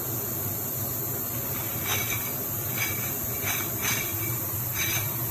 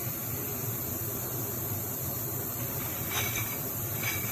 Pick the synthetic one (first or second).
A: second